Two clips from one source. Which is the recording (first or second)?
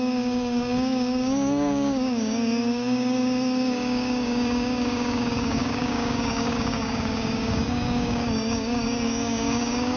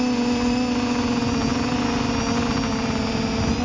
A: second